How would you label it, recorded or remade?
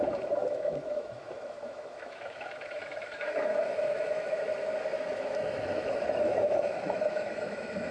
remade